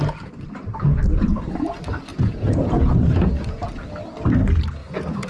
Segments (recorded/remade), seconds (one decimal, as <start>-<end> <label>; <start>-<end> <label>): 0.0-2.1 recorded; 2.1-3.3 remade; 3.3-4.8 recorded; 4.8-5.3 remade